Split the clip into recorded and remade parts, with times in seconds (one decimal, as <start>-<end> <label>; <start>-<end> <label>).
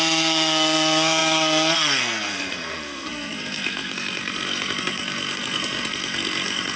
0.0-6.8 remade